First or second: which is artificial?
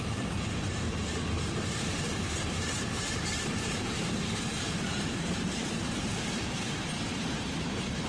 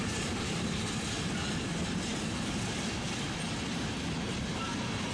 first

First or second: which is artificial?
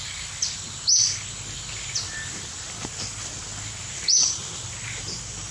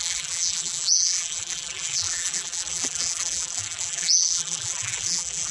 second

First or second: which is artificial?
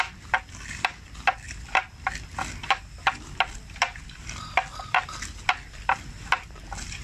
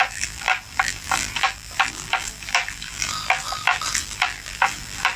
second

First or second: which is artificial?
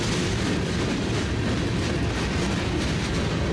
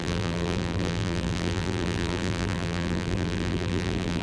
second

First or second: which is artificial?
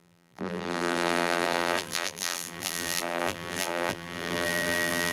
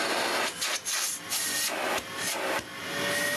first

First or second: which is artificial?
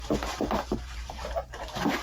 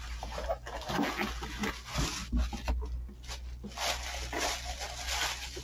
first